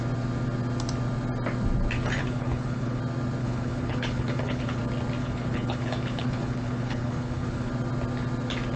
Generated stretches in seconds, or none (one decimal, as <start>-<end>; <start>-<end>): 2.2-3.0; 3.4-4.8; 5.2-7.7